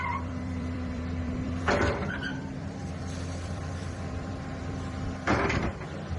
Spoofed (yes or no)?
yes